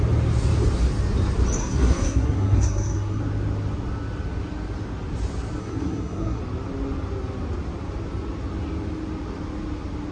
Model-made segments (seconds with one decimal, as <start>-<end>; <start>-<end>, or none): 1.6-3.2; 5.6-6.4